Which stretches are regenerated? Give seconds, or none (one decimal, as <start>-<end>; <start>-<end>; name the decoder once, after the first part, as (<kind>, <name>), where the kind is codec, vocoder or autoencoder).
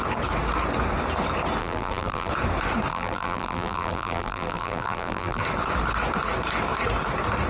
1.6-2.3 (vocoder, BigVGAN v2); 2.9-5.4